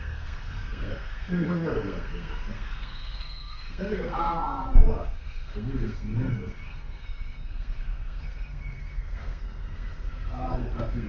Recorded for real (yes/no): no